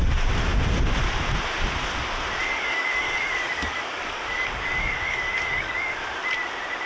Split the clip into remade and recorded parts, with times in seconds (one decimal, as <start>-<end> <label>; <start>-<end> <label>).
0.0-2.4 recorded; 2.4-6.0 remade; 6.0-6.9 recorded